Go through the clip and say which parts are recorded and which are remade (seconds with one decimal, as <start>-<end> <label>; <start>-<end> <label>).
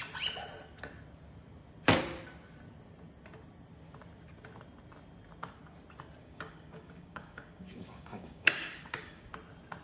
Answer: 0.0-6.2 recorded; 6.2-9.3 remade; 9.3-9.8 recorded